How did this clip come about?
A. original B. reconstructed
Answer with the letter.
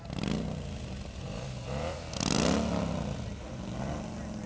A